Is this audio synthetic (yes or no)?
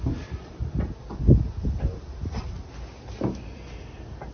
no